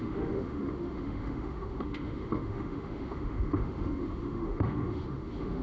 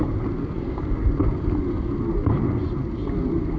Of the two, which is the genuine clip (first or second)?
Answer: second